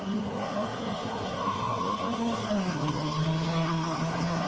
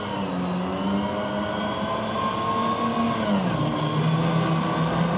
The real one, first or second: second